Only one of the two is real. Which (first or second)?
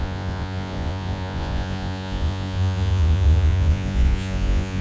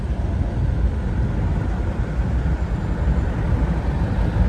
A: second